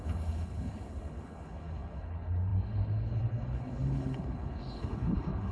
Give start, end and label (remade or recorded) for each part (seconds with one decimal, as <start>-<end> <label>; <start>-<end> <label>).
0.0-5.5 remade